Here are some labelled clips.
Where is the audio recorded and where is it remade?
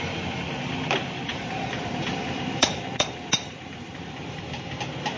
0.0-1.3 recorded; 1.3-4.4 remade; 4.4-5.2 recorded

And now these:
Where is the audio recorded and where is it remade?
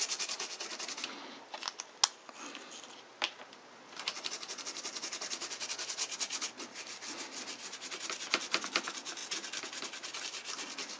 0.0-11.0 recorded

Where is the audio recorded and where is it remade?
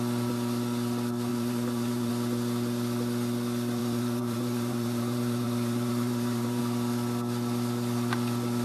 0.0-1.3 recorded; 1.3-2.1 remade; 2.1-3.8 recorded; 3.8-6.6 remade; 6.6-8.6 recorded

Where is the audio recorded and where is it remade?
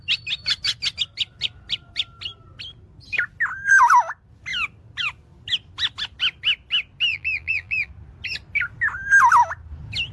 0.0-7.1 recorded; 7.1-7.9 remade; 7.9-10.1 recorded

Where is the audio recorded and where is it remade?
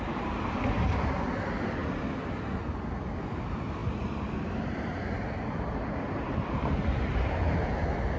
0.0-8.2 recorded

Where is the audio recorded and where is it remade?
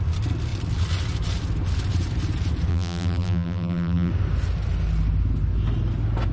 0.0-2.7 recorded; 2.7-4.1 remade; 4.1-6.3 recorded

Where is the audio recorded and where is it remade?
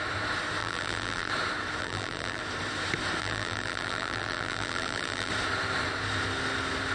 0.0-0.6 recorded; 0.6-1.3 remade; 1.3-1.8 recorded; 1.8-2.4 remade; 2.4-3.2 recorded; 3.2-5.3 remade; 5.3-6.9 recorded